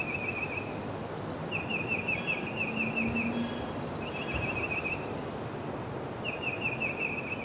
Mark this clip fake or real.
real